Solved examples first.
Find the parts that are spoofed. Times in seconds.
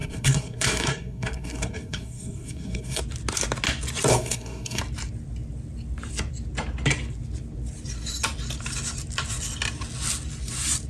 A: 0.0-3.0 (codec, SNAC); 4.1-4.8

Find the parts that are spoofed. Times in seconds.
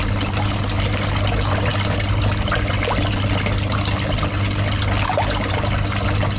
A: none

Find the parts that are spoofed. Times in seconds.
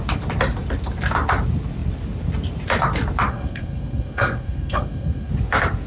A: 3.3-5.3 (codec, SNAC)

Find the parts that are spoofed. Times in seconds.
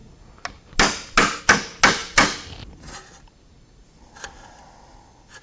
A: none